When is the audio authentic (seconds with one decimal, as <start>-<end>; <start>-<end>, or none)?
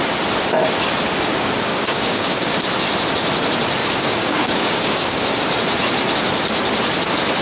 0.0-1.7; 2.5-3.8; 5.4-7.4